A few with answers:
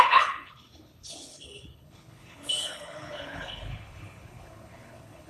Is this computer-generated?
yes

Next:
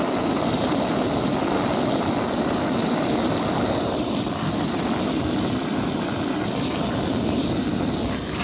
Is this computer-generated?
yes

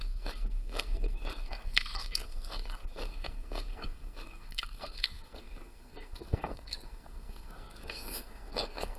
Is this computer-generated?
yes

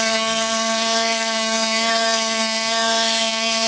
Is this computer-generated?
yes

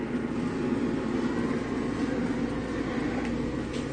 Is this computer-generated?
no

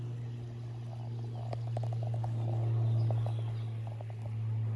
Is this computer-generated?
no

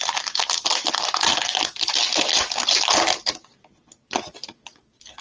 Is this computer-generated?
no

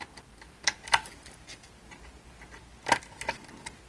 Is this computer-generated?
no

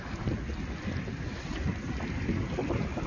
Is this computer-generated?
no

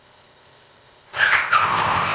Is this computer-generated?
yes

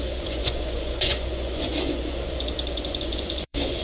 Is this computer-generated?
yes